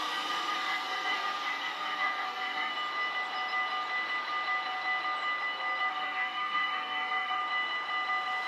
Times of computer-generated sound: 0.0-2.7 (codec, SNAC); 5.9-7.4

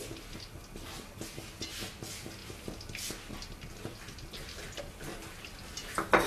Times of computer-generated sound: none

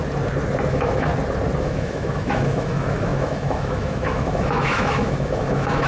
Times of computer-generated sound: 0.7-1.1 (autoencoder, DAC-VAE); 1.6-5.9

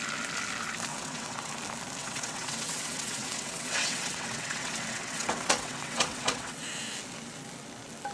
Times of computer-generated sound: 0.9-1.5 (vocoder, WaveNeXt); 2.0-6.6

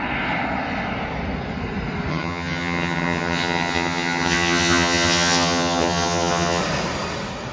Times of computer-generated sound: 2.1-6.6 (vocoder, HiFi-GAN)

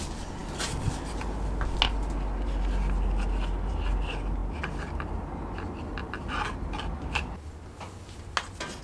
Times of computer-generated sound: none